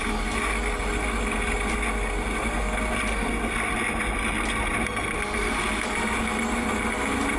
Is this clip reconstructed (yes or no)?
no